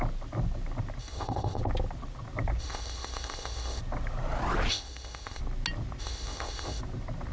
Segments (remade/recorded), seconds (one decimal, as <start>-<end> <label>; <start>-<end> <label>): 0.0-1.0 recorded; 1.0-1.6 remade; 1.6-2.6 recorded; 2.6-3.8 remade; 3.8-4.7 recorded; 4.7-5.4 remade; 5.4-6.0 recorded; 6.0-6.8 remade; 6.8-7.3 recorded